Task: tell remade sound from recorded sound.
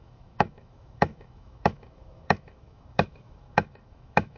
remade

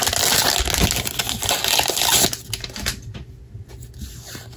recorded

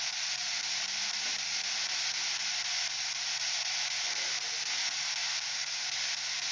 recorded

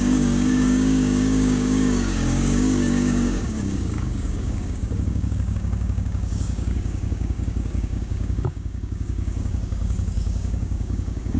remade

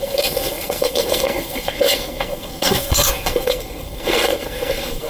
remade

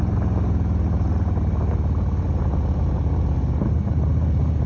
recorded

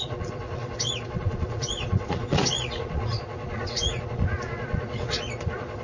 remade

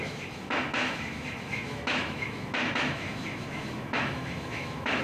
remade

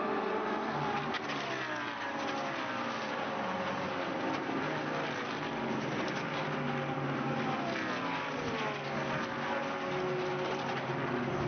recorded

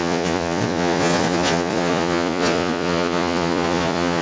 remade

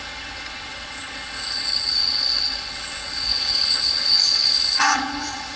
remade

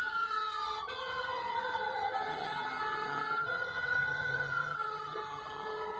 remade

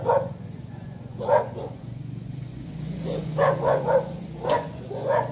remade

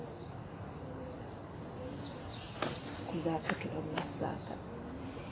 recorded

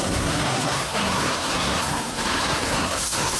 remade